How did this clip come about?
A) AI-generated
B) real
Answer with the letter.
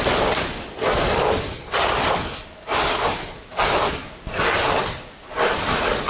B